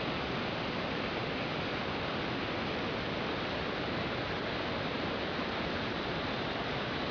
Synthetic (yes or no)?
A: no